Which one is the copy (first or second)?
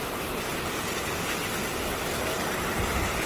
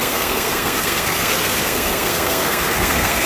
second